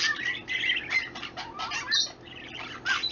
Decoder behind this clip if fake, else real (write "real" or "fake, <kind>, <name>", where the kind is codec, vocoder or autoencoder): real